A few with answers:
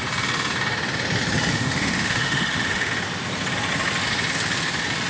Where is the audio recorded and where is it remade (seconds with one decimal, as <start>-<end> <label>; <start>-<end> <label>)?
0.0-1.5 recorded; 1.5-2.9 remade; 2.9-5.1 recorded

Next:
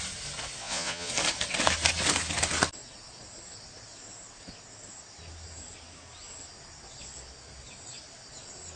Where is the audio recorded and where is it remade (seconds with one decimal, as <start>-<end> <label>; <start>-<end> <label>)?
0.0-0.6 recorded; 0.6-1.1 remade; 1.1-8.8 recorded

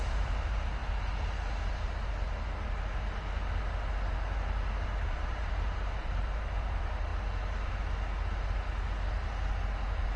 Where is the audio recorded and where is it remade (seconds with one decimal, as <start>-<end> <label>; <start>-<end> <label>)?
0.0-0.8 remade; 0.8-5.1 recorded; 5.1-7.1 remade; 7.1-10.2 recorded

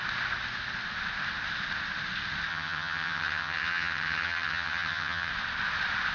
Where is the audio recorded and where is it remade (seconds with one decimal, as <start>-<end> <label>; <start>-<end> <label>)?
0.0-2.5 recorded; 2.5-5.3 remade; 5.3-6.1 recorded

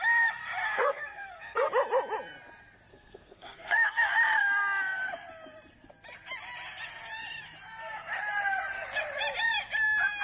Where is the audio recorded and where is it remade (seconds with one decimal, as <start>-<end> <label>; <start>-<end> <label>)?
0.0-0.6 recorded; 0.6-1.7 remade; 1.7-2.9 recorded; 2.9-4.1 remade; 4.1-10.2 recorded